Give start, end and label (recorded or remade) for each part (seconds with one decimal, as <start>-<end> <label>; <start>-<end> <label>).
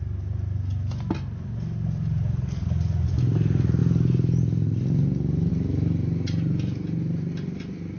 0.0-8.0 recorded